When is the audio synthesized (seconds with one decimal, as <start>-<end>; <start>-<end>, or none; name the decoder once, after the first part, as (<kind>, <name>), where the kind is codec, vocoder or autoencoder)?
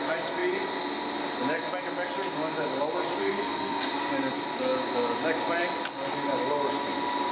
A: 3.2-3.9 (codec, SNAC)